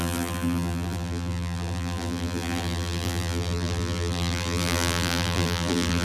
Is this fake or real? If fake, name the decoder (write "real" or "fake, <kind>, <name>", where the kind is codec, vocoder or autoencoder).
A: fake, vocoder, BigVGAN v2